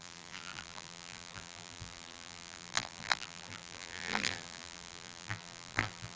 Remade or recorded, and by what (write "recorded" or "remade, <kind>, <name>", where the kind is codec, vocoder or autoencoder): remade, vocoder, BigVGAN v2